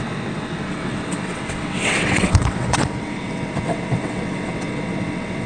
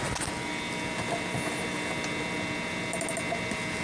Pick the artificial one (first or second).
first